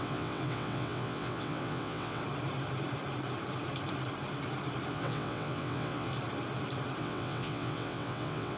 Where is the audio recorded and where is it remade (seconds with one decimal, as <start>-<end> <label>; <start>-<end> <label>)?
0.0-2.2 remade; 2.2-4.9 recorded; 4.9-6.1 remade; 6.1-7.0 recorded; 7.0-8.6 remade